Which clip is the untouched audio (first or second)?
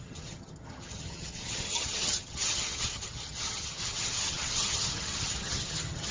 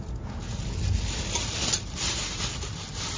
second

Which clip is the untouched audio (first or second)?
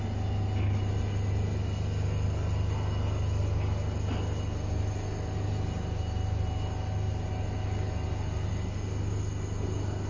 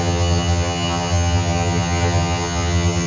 first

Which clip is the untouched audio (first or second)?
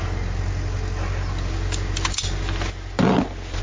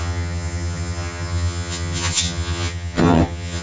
first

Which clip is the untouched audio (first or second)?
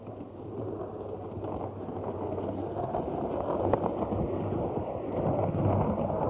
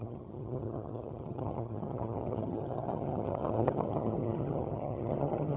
first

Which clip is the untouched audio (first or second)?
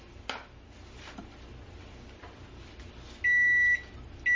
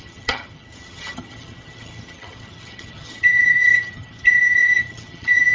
first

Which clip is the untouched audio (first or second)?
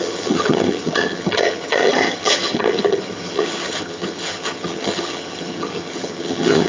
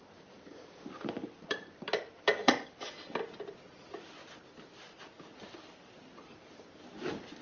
second